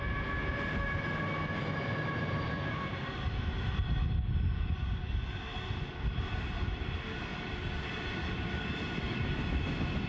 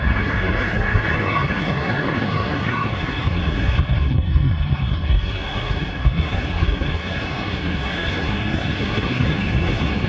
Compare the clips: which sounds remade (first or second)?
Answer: second